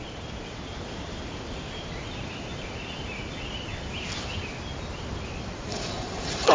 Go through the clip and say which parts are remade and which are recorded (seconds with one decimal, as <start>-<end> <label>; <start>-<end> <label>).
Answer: 0.0-5.7 recorded; 5.7-6.5 remade